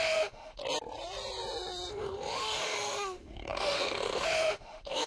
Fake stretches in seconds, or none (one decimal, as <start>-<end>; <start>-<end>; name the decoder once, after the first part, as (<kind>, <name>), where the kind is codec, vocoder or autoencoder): 0.0-0.6 (autoencoder, DAC-VAE); 1.9-5.1